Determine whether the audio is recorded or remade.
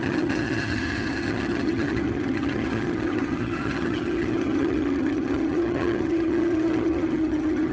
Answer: remade